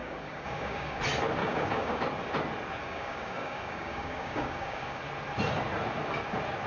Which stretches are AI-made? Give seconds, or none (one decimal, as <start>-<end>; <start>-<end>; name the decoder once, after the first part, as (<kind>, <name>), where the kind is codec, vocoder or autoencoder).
0.0-1.0 (codec, DAC); 1.4-2.0; 2.8-5.0

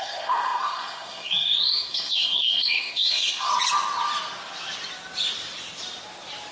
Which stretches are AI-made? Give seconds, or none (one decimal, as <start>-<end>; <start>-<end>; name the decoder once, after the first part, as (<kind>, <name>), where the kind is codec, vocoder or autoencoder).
0.0-3.5 (codec, SNAC)

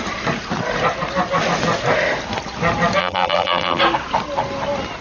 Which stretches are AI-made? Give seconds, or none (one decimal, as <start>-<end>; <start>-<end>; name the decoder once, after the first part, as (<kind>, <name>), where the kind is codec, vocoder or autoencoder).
3.0-3.8 (vocoder, BigVGAN v2)

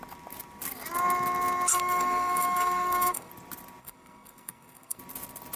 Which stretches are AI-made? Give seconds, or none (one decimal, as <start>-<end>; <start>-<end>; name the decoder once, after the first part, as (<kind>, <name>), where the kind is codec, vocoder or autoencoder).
1.7-3.3 (codec, SNAC); 3.8-5.0